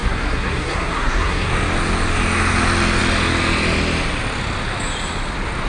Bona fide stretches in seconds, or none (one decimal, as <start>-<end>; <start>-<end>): 1.5-5.7